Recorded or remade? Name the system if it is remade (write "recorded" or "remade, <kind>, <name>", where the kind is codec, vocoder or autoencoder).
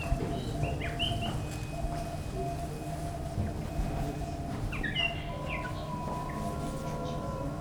recorded